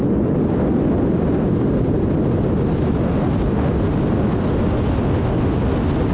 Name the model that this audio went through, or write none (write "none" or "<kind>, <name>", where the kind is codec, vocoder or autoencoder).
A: none